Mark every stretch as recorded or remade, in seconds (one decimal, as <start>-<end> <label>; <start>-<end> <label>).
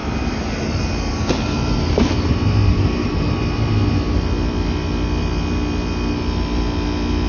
0.0-2.7 recorded; 2.7-3.3 remade; 3.3-7.3 recorded